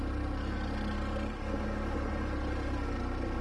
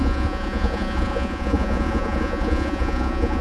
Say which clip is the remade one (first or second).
second